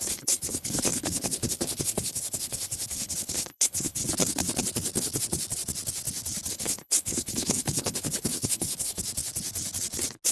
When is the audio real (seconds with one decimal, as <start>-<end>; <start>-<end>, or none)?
4.0-6.5; 9.0-10.3